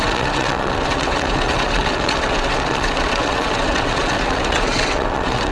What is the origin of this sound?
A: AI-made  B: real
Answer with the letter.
A